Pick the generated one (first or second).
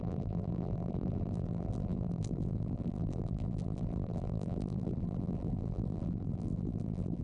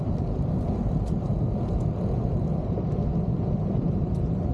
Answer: first